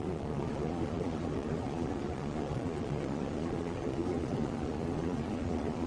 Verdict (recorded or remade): remade